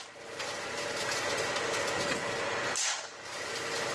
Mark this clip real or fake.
real